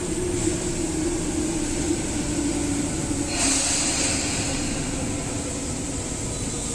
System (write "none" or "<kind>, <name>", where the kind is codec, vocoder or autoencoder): none